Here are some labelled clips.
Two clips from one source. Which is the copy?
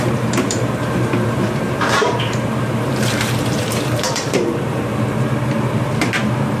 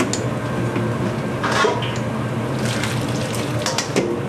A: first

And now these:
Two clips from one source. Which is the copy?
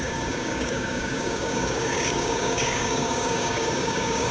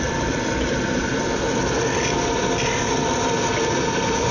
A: first